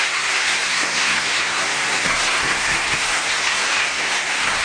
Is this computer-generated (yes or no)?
yes